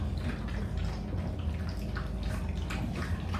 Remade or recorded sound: recorded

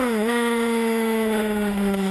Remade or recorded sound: remade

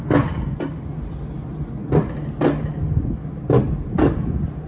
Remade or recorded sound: recorded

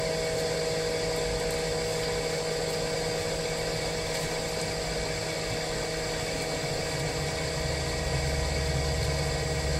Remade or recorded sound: recorded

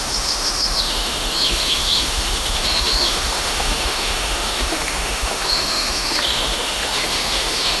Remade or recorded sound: remade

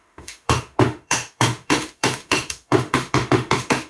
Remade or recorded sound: remade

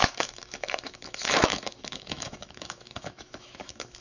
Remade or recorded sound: remade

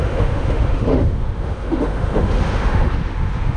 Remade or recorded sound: remade